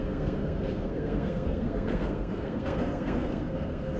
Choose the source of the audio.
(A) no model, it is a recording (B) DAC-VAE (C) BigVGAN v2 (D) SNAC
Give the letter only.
D